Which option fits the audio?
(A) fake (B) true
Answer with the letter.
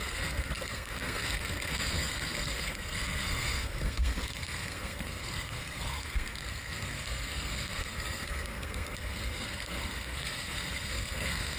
A